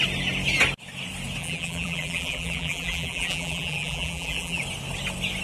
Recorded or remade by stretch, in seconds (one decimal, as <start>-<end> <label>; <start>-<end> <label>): 0.0-1.4 recorded; 1.4-4.6 remade; 4.6-5.4 recorded